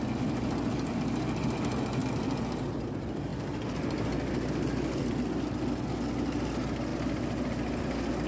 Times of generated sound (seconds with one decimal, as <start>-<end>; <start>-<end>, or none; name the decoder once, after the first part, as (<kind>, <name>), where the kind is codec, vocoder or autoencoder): none